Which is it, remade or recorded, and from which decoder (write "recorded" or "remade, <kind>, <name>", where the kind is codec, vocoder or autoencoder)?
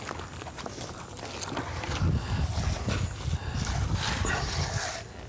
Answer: recorded